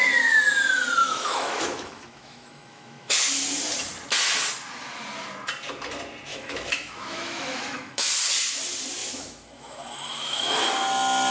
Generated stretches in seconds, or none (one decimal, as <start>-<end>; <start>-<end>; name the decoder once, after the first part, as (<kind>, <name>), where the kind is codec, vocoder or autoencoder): 1.0-3.3 (autoencoder, DAC-VAE); 6.3-8.1; 9.0-10.7